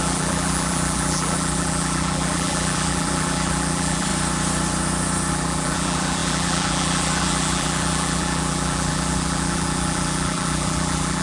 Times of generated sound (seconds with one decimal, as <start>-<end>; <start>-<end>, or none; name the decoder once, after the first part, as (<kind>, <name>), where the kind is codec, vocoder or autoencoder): 0.0-4.1 (vocoder, BigVGAN v2); 5.3-11.2